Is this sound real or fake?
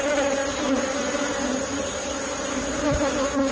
fake